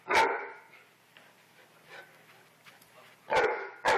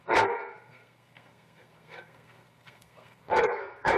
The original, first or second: first